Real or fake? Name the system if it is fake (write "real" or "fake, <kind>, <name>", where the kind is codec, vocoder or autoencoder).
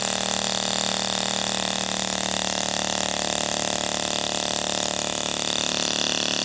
real